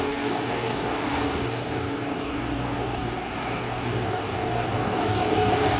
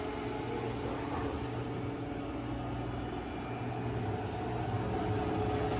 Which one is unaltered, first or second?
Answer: second